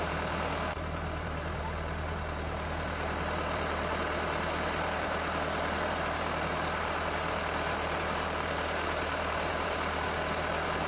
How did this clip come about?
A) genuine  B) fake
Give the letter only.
B